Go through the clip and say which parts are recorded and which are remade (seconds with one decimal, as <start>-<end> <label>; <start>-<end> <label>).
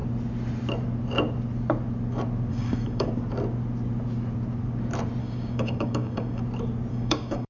0.0-2.5 recorded; 2.5-3.1 remade; 3.1-5.2 recorded; 5.2-6.4 remade; 6.4-6.9 recorded; 6.9-7.5 remade